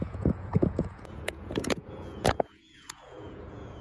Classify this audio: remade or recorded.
remade